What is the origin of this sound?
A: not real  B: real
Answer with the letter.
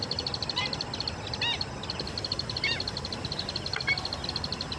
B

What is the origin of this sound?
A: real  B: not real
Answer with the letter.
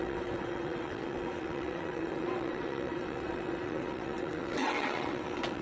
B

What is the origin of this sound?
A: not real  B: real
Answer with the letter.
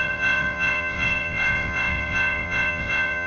A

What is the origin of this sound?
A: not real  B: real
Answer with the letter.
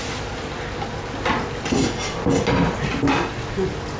B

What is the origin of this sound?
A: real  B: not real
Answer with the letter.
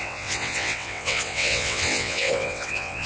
B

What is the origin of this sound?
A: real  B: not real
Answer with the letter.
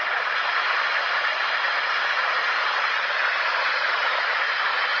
A